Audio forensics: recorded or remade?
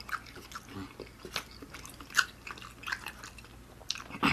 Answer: recorded